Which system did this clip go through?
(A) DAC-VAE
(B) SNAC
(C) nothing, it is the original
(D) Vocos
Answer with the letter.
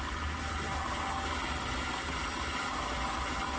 C